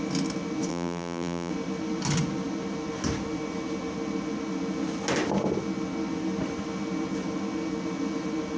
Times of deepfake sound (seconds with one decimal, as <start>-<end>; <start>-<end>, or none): 0.7-1.5